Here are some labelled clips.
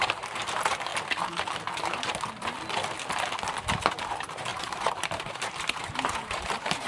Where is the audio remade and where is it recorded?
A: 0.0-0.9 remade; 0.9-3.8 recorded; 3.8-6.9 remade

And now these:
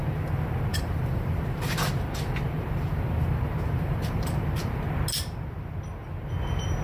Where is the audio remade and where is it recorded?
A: 0.0-0.7 recorded; 0.7-4.8 remade; 4.8-6.8 recorded

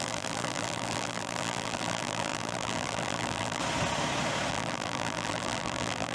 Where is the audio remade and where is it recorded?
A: 0.0-3.6 remade; 3.6-4.5 recorded; 4.5-6.1 remade